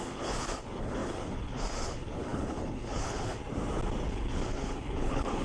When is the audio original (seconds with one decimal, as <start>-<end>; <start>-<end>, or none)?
3.4-4.1